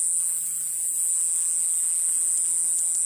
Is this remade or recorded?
recorded